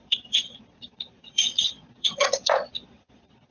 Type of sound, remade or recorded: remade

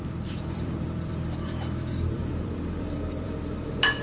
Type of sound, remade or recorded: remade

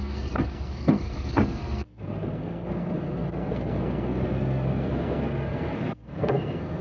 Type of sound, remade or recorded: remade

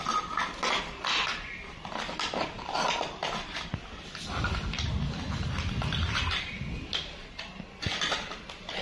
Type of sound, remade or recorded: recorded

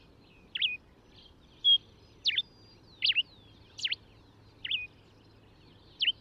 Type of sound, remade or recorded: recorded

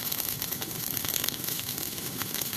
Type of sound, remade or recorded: remade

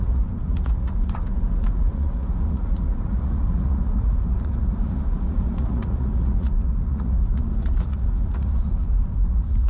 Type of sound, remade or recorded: remade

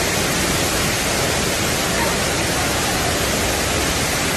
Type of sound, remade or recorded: recorded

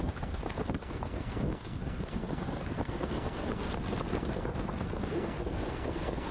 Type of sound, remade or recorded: remade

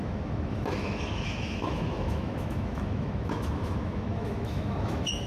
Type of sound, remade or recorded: remade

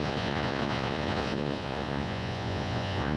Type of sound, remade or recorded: remade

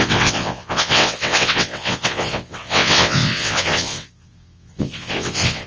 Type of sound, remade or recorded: remade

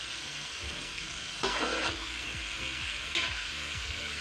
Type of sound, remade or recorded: remade